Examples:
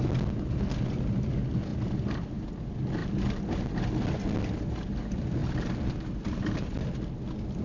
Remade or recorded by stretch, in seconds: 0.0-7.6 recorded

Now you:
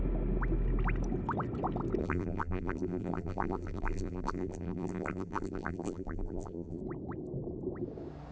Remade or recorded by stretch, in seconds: 0.0-2.0 recorded; 2.0-6.8 remade; 6.8-8.3 recorded

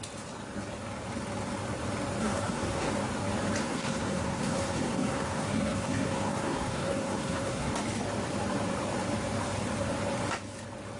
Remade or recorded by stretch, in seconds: 0.0-2.2 recorded; 2.2-2.9 remade; 2.9-3.6 recorded; 3.6-7.7 remade; 7.7-11.0 recorded

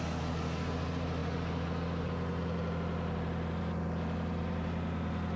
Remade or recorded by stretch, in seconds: 0.0-5.4 recorded

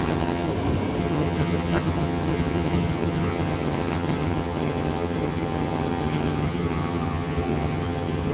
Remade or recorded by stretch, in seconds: 0.0-0.5 remade; 0.5-1.0 recorded; 1.0-8.3 remade

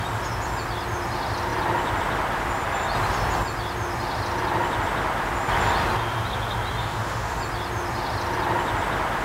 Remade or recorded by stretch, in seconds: 0.0-6.8 recorded; 6.8-7.4 remade; 7.4-9.2 recorded

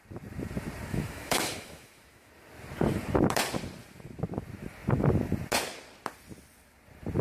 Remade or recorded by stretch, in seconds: 0.0-0.9 recorded; 0.9-2.3 remade; 2.3-7.2 recorded

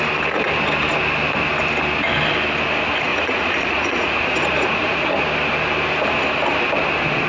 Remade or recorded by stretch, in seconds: 0.0-3.1 recorded; 3.1-5.2 remade; 5.2-7.3 recorded